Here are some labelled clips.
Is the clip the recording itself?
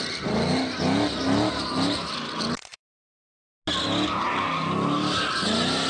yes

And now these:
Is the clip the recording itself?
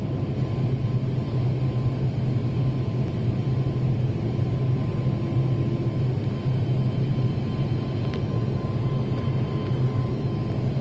yes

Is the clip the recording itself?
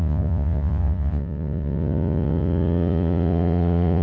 no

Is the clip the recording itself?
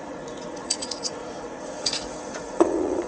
no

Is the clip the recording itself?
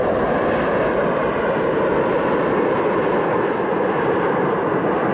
yes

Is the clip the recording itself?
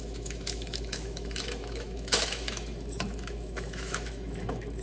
no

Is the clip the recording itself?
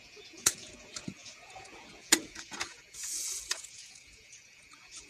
no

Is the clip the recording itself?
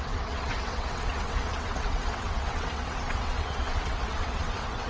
no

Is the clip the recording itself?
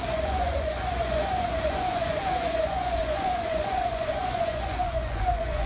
no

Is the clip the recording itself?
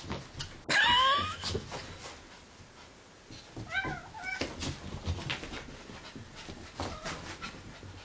yes